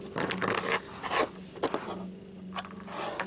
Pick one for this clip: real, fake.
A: real